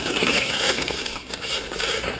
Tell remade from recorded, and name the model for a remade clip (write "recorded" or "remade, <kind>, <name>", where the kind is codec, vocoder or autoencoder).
remade, codec, SNAC